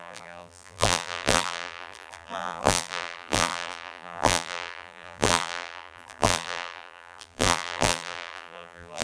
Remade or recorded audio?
remade